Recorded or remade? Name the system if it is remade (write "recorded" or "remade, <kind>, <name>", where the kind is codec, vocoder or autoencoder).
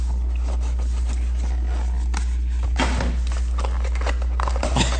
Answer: recorded